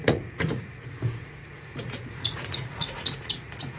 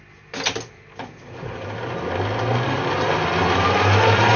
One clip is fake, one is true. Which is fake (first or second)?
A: first